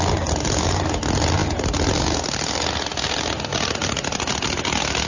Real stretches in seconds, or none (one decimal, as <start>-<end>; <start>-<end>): 0.0-5.1